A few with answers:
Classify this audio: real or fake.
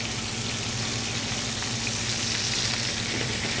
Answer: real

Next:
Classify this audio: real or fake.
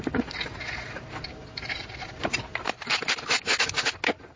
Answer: real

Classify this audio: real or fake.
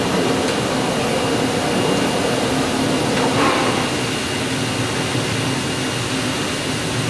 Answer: real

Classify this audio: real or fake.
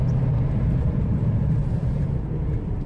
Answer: fake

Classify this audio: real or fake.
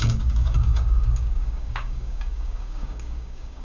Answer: fake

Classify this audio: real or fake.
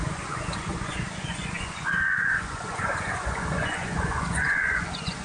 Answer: fake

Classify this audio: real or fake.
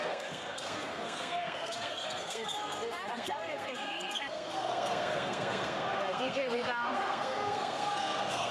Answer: fake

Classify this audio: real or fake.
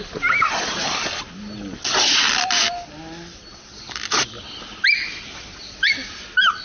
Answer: real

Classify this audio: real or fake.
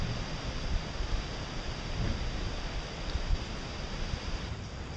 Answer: real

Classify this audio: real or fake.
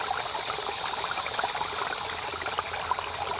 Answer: real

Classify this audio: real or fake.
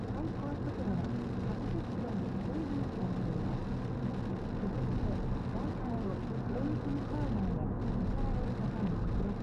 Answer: real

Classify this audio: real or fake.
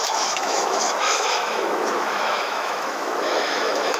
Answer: fake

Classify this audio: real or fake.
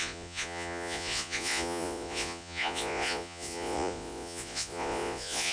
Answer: fake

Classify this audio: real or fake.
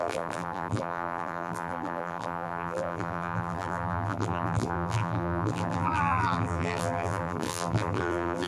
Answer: fake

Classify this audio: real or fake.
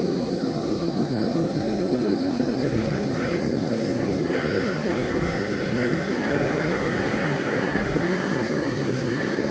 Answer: fake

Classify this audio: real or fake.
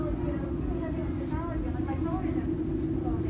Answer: real